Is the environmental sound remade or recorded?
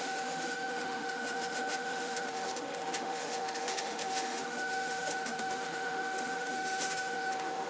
remade